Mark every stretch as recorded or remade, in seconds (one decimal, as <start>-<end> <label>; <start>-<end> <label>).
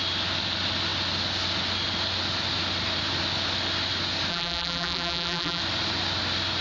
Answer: 0.0-4.3 recorded; 4.3-5.6 remade; 5.6-6.6 recorded